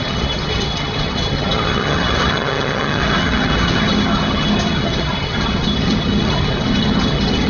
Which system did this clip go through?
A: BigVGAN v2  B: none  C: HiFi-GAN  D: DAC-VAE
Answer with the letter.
C